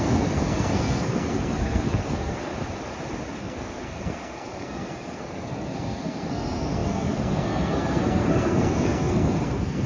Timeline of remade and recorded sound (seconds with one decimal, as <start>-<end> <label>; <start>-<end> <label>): 0.0-2.5 remade; 2.5-3.4 recorded; 3.4-9.9 remade